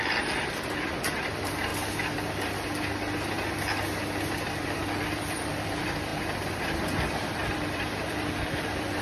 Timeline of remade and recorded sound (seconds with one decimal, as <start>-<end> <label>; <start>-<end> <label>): 0.0-1.7 remade; 1.7-4.3 recorded; 4.3-6.1 remade; 6.1-6.6 recorded; 6.6-9.0 remade